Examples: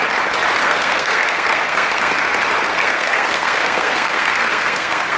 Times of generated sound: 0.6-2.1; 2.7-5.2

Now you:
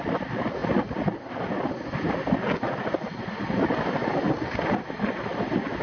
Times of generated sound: none

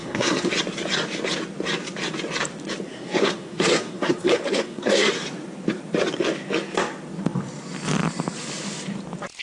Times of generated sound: 0.0-0.5; 2.9-5.1

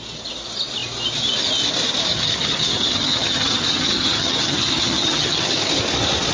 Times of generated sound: 2.1-5.5

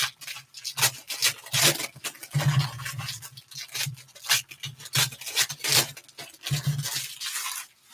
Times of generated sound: none

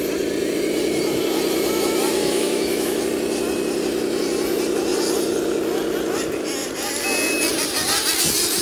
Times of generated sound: 2.2-3.0